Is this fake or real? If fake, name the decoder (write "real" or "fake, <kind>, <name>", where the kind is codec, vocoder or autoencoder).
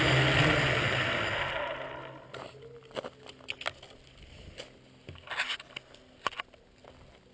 real